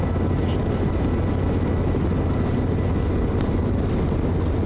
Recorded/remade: recorded